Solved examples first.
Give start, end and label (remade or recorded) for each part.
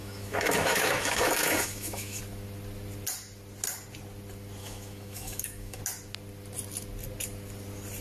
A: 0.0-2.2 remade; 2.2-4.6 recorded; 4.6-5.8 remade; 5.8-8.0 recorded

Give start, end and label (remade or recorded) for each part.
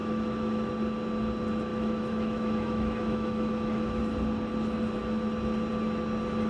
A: 0.0-0.7 remade; 0.7-1.7 recorded; 1.7-4.0 remade; 4.0-6.5 recorded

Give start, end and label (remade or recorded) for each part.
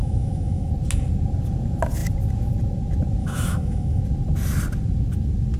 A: 0.0-0.7 remade; 0.7-3.2 recorded; 3.2-4.0 remade; 4.0-5.6 recorded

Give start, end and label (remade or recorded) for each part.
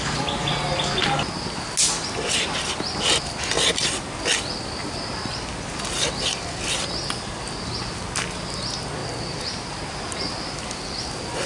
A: 0.0-11.5 recorded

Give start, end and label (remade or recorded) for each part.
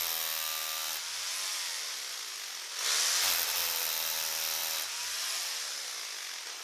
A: 0.0-6.6 recorded